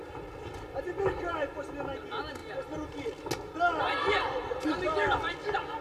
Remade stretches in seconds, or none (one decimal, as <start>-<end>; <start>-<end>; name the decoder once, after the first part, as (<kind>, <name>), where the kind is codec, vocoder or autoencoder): none